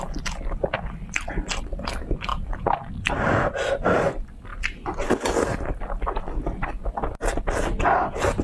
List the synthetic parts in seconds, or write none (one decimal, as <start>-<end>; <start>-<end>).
2.3-3.1; 4.5-6.1